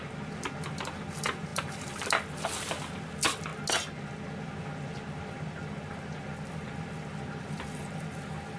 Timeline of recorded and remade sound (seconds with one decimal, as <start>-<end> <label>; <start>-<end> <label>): 0.0-3.5 remade; 3.5-4.6 recorded; 4.6-8.6 remade